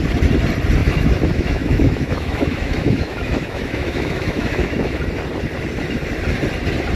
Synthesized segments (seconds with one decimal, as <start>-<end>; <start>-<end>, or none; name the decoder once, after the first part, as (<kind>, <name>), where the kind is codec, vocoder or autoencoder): 0.8-5.0 (autoencoder, DAC-VAE)